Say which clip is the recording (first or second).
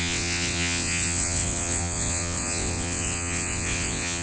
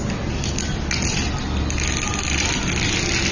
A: second